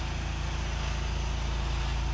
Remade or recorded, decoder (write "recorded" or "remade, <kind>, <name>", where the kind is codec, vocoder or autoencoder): recorded